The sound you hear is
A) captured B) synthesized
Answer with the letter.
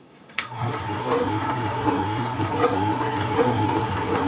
B